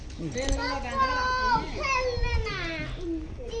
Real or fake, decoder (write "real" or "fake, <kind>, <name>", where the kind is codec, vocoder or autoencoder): real